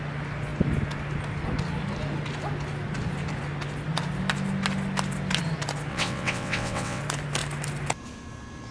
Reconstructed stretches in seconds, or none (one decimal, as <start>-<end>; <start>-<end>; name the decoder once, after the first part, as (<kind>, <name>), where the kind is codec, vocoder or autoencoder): 5.9-7.0 (vocoder, WaveNeXt)